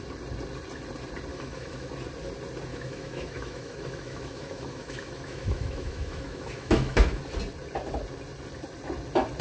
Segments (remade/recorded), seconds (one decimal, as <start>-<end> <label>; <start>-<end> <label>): 0.0-1.3 recorded; 1.3-1.9 remade; 1.9-2.7 recorded; 2.7-7.2 remade; 7.2-9.4 recorded